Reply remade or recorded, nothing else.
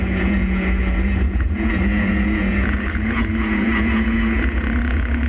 remade